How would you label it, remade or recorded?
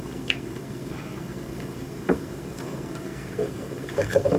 remade